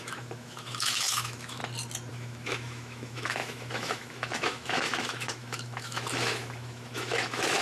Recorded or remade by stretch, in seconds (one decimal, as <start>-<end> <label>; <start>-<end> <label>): 0.0-1.6 remade; 1.6-2.1 recorded; 2.1-7.6 remade

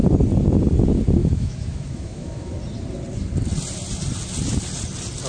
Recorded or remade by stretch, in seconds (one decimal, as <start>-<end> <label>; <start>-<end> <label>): 0.0-1.2 recorded; 1.2-2.5 remade; 2.5-5.3 recorded

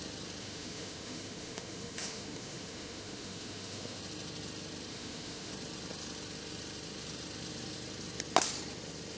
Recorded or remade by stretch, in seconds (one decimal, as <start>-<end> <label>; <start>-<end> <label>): 0.0-0.4 recorded; 0.4-4.0 remade; 4.0-4.9 recorded; 4.9-5.5 remade; 5.5-9.2 recorded

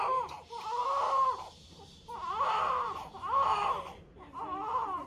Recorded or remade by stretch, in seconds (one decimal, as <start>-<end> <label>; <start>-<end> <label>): 0.0-5.1 recorded

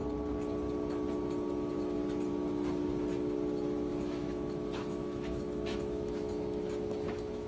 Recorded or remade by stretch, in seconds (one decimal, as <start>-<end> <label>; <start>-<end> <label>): 0.0-3.9 recorded; 3.9-7.5 remade

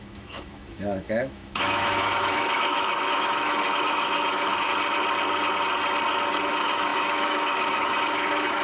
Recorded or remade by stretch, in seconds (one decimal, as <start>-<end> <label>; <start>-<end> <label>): 0.0-4.7 remade; 4.7-6.5 recorded; 6.5-8.6 remade